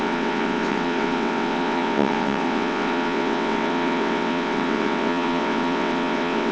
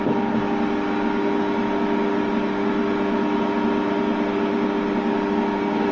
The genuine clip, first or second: second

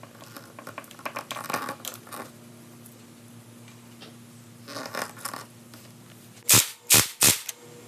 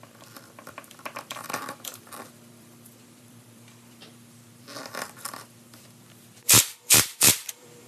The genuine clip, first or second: first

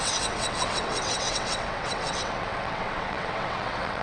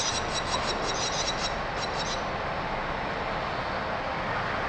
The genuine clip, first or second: second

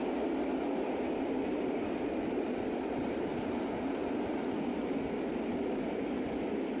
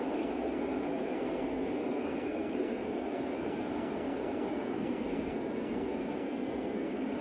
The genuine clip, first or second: first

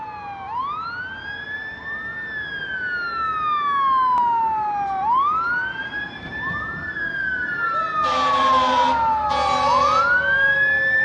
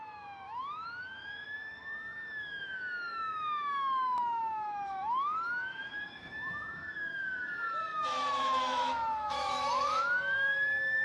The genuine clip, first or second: first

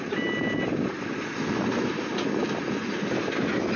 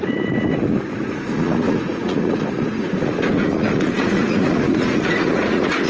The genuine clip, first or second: first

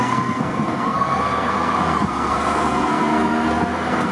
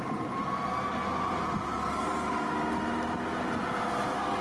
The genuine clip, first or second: second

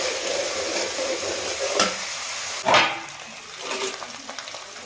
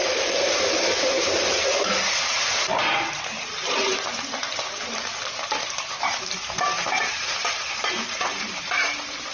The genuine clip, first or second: first